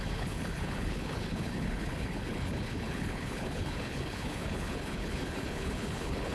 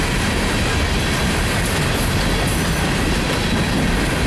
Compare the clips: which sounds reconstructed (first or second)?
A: first